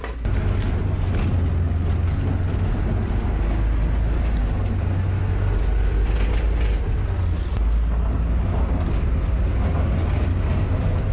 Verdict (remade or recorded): recorded